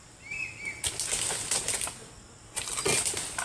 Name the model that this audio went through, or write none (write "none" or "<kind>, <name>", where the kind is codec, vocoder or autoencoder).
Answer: none